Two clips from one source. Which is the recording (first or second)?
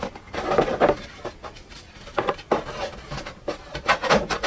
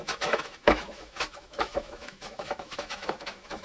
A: first